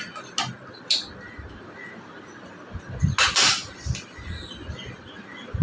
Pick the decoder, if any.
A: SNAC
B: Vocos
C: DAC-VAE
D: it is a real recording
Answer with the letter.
D